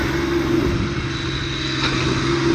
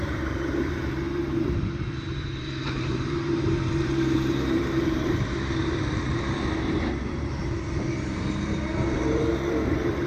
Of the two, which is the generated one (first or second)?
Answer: second